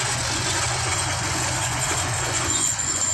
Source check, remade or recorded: remade